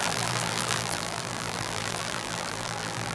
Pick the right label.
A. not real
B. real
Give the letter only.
A